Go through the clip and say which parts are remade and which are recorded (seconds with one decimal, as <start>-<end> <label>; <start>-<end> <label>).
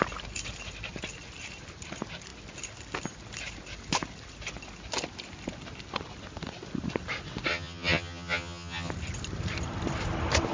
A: 0.0-7.5 recorded; 7.5-8.9 remade; 8.9-10.5 recorded